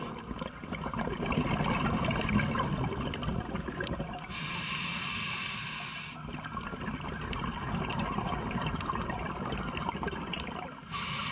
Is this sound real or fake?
real